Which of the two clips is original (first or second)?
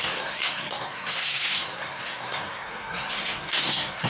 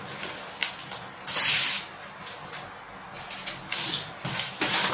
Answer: second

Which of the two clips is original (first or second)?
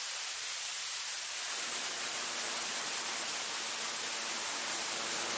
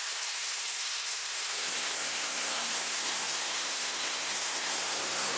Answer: first